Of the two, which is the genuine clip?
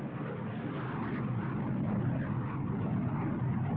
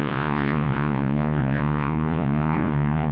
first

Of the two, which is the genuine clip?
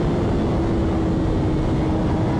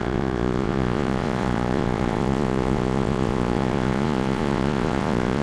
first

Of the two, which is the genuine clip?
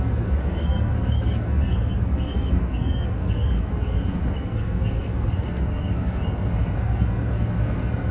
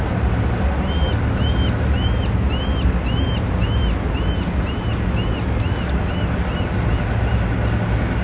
second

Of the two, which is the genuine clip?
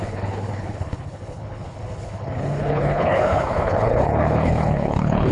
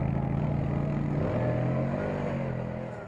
second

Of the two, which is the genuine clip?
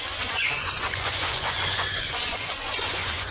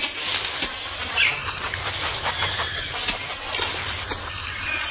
second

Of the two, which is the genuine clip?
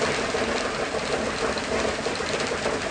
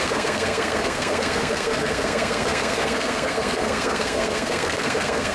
first